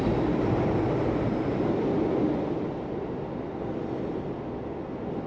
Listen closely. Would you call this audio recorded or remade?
recorded